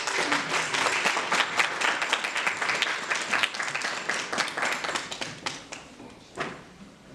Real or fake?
real